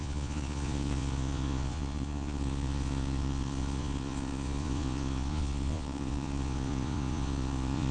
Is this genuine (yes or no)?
no